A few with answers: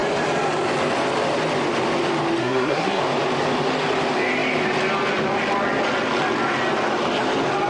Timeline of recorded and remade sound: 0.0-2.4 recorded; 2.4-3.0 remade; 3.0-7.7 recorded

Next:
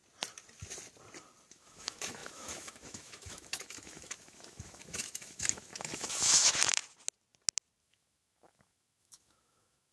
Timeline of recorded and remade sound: 0.0-1.5 recorded; 1.5-6.8 remade; 6.8-7.8 recorded; 7.8-9.9 remade

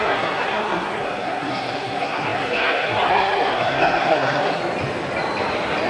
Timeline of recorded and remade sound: 0.0-4.6 remade; 4.6-5.9 recorded